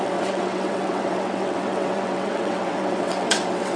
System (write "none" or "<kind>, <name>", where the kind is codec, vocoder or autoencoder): vocoder, WaveNeXt